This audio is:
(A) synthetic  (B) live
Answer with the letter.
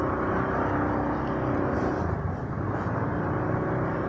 B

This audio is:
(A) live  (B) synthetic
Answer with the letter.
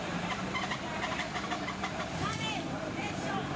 B